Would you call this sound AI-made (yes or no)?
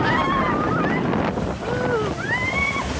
no